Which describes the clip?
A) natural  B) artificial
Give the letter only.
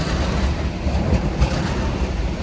A